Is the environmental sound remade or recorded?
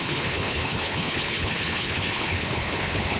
remade